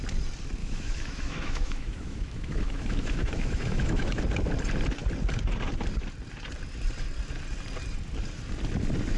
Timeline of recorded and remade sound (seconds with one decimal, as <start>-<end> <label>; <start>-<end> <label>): 0.0-0.6 recorded; 0.6-4.2 remade; 4.2-9.2 recorded